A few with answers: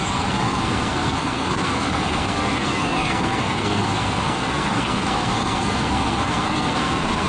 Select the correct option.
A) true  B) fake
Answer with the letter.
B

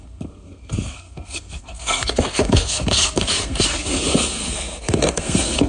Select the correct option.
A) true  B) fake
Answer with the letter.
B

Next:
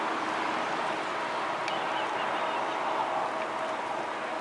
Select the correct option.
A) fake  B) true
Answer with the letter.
B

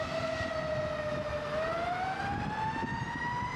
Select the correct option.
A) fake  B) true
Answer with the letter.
B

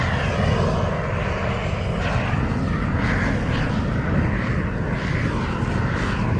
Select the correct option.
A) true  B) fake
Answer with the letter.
A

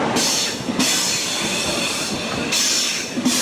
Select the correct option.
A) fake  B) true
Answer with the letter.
B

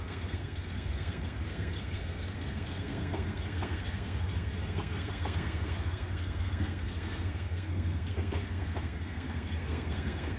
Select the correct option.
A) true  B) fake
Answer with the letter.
B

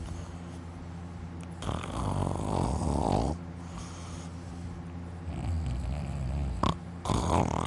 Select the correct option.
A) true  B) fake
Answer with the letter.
A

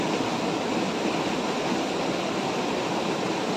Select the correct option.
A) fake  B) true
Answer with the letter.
B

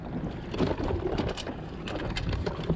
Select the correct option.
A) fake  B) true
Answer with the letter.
B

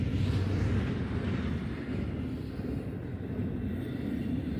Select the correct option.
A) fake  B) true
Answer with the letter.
B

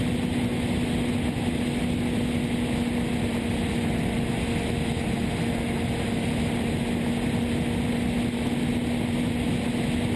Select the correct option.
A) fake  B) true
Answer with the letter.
B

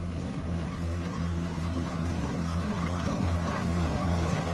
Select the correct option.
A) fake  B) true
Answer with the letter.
A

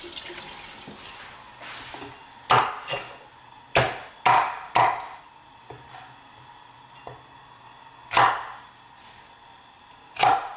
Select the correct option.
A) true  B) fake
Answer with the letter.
A